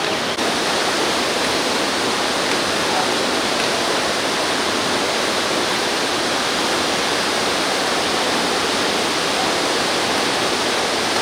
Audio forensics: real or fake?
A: real